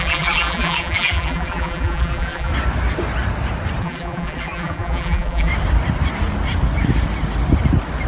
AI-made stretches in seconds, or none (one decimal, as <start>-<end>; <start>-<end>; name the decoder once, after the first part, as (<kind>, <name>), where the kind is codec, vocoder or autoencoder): 0.0-2.5 (vocoder, BigVGAN v2); 3.8-5.5